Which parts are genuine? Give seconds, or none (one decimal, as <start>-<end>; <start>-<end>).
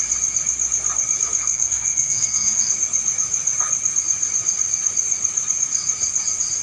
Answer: 0.0-1.4; 2.7-6.6